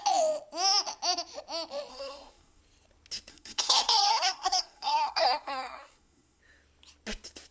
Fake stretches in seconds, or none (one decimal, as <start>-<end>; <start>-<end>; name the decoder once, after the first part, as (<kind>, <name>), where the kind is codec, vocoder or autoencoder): 1.9-2.6 (codec, SNAC); 3.3-6.4